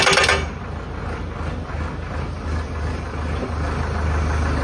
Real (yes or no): yes